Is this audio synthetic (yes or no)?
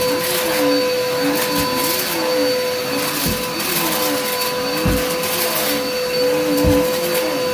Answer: no